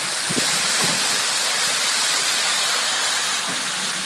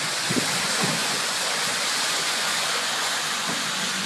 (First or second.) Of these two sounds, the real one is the first